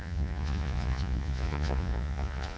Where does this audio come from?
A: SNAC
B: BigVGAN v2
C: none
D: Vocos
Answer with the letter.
D